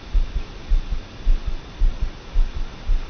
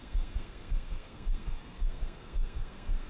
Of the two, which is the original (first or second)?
first